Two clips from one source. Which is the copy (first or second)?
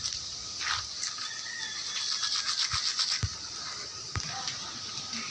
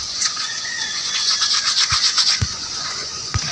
second